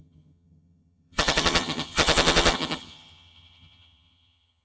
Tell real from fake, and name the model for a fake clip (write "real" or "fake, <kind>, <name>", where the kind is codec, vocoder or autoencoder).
fake, vocoder, HiFi-GAN